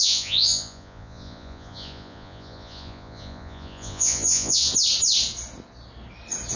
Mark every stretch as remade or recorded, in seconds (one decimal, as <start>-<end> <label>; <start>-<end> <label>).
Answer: 0.0-4.7 remade; 4.7-6.6 recorded